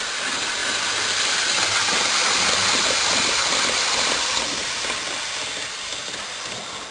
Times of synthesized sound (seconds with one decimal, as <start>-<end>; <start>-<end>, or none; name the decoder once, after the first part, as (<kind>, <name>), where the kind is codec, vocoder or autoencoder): none